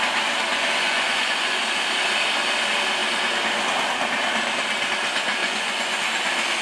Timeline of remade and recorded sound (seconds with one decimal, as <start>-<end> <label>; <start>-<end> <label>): 0.0-0.5 recorded; 0.5-1.6 remade; 1.6-5.4 recorded; 5.4-6.0 remade; 6.0-6.6 recorded